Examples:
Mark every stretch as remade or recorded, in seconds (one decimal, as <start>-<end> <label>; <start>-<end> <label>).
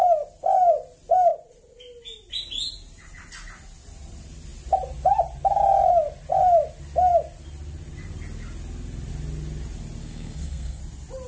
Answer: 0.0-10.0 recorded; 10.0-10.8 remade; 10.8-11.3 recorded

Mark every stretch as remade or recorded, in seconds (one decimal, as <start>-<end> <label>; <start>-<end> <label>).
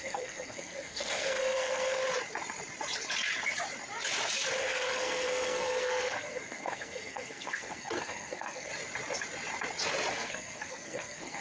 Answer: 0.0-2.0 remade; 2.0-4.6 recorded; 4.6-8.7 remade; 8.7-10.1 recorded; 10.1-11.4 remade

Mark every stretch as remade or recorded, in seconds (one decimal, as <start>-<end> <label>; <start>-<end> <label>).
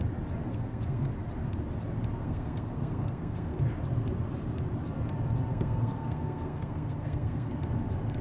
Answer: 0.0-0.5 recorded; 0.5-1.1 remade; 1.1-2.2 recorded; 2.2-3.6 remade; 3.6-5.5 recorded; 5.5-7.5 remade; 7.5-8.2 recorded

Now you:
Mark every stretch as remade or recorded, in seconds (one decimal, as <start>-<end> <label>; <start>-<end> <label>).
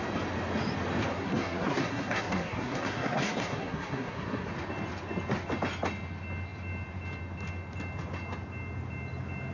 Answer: 0.0-1.1 recorded; 1.1-4.5 remade; 4.5-9.5 recorded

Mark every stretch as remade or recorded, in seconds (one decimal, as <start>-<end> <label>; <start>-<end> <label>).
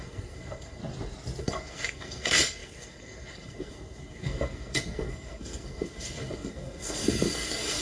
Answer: 0.0-0.8 remade; 0.8-1.4 recorded; 1.4-7.8 remade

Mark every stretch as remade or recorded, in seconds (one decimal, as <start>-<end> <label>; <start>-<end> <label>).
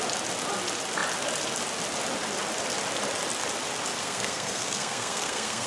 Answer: 0.0-4.0 recorded; 4.0-5.7 remade